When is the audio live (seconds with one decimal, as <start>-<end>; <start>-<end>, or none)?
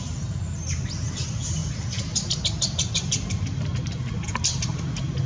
0.0-5.3